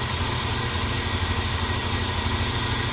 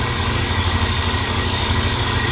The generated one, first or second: second